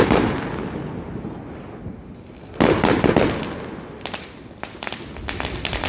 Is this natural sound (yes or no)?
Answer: yes